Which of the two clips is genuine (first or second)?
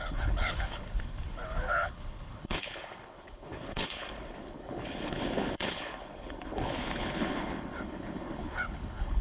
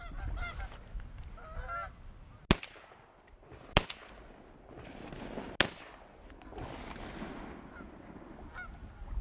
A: second